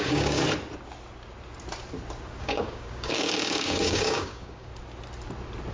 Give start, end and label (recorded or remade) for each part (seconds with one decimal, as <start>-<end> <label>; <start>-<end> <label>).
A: 0.0-0.4 remade; 0.4-2.4 recorded; 2.4-4.7 remade; 4.7-5.7 recorded